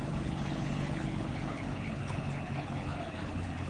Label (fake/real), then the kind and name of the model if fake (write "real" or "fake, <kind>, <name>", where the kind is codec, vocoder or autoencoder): fake, codec, HILCodec